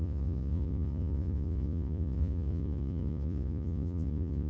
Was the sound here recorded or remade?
remade